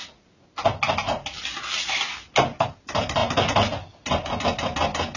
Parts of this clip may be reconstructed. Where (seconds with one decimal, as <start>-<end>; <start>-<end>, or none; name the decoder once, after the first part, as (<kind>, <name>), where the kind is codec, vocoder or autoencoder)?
none